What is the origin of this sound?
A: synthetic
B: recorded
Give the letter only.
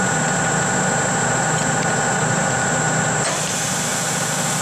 B